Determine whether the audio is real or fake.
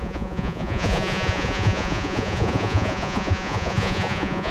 fake